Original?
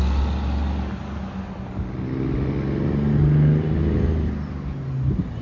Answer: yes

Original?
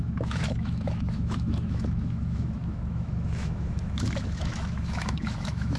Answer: no